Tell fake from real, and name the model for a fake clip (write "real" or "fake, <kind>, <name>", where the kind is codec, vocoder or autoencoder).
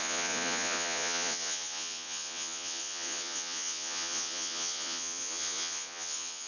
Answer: fake, vocoder, Vocos